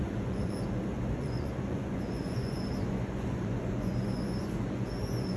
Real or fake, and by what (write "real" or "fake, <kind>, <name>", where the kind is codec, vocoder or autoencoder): fake, vocoder, Vocos